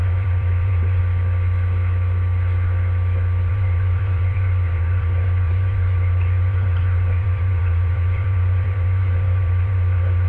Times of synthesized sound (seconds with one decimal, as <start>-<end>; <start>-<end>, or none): 0.0-1.0; 3.5-10.3